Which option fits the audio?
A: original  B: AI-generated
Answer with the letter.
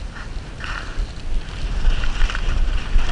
A